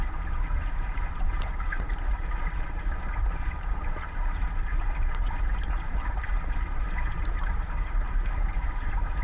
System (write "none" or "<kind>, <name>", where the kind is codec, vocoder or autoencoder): vocoder, BigVGAN v2